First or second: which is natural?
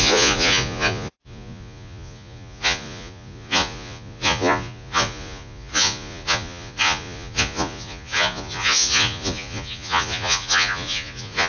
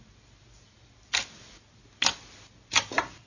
second